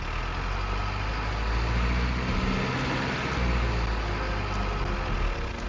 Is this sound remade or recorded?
recorded